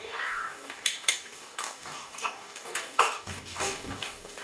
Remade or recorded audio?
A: remade